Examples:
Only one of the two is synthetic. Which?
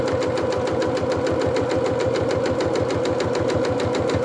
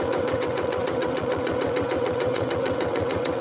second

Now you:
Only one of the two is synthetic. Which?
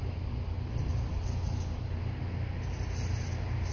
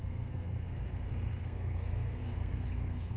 second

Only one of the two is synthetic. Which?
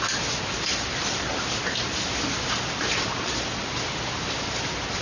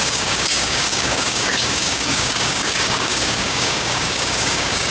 second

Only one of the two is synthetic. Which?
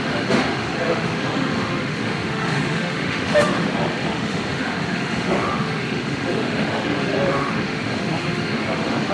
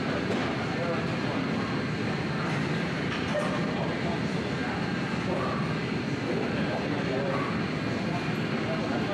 first